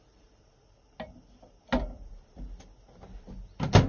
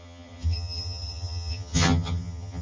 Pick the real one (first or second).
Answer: first